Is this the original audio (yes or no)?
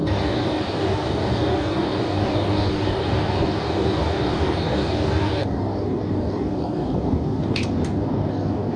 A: no